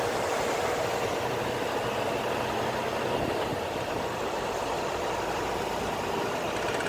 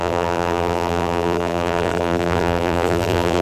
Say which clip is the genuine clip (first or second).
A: first